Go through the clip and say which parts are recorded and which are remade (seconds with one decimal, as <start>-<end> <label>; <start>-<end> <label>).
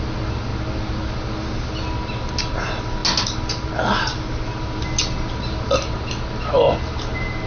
0.0-7.5 recorded